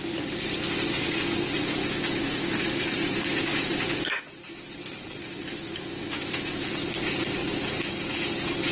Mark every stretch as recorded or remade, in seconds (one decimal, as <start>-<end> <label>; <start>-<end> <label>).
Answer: 0.0-1.8 recorded; 1.8-4.2 remade; 4.2-5.2 recorded; 5.2-6.7 remade; 6.7-8.7 recorded